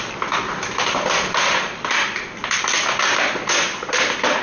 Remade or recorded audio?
remade